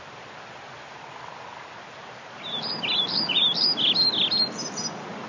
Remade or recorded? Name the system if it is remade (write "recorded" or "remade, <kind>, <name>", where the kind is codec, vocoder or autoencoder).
recorded